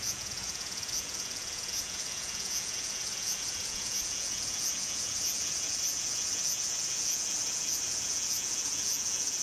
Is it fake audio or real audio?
fake